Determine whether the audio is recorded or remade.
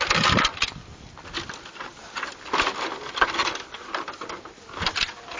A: recorded